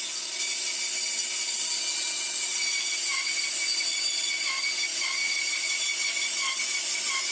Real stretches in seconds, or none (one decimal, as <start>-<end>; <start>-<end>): 0.0-4.9